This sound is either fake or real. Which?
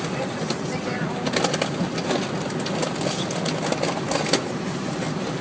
real